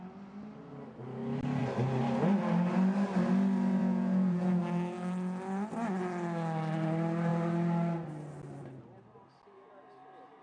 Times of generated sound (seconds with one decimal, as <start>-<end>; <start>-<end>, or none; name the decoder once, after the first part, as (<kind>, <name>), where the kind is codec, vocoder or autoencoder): 3.8-4.6 (vocoder, Vocos)